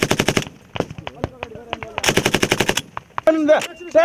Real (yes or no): yes